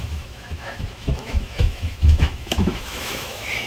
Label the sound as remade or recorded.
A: remade